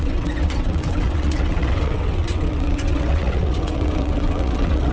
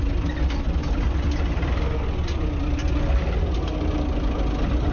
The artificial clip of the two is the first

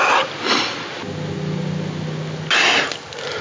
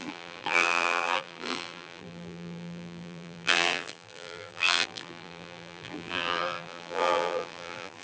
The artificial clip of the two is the second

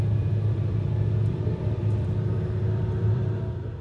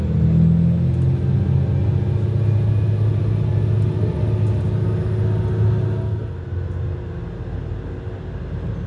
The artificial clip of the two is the first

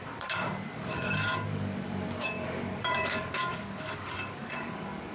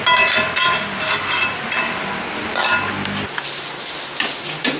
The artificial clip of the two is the first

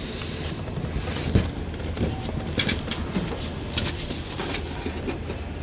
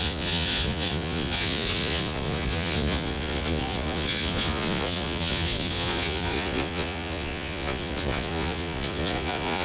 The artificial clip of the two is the second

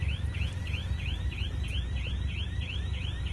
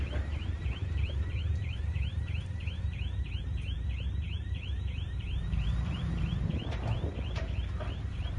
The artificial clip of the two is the second